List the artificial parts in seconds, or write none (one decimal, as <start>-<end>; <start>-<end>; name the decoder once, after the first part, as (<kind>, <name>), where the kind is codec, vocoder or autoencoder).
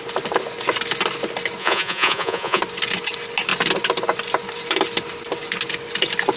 1.6-2.6 (vocoder, Vocos)